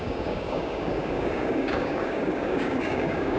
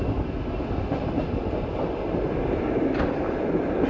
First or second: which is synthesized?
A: first